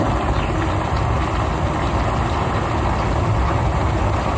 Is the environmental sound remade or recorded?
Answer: recorded